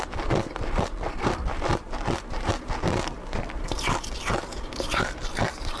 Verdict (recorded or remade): recorded